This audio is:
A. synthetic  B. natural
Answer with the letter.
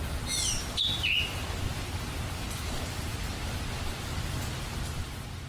B